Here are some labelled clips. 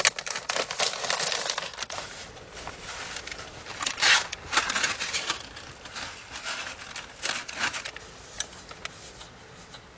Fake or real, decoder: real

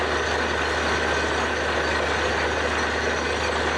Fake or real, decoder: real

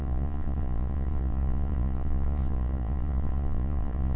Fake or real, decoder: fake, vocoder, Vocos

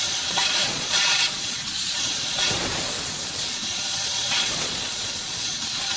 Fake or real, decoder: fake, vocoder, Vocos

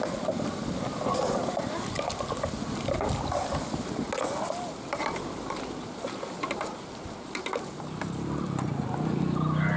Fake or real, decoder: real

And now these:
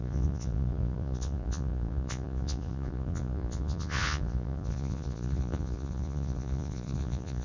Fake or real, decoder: fake, vocoder, Vocos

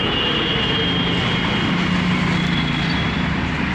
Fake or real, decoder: real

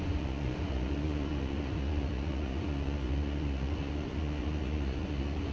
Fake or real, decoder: fake, vocoder, Vocos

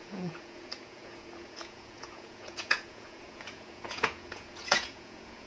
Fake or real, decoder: fake, vocoder, Vocos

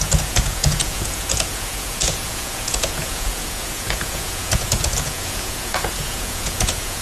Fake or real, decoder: fake, vocoder, Vocos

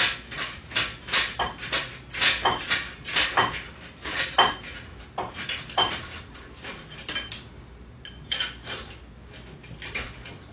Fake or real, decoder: real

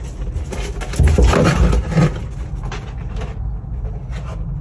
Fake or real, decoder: real